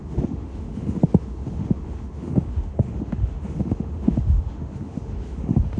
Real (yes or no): no